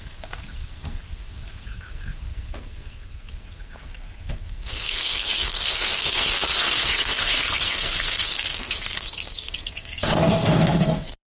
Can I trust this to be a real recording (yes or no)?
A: no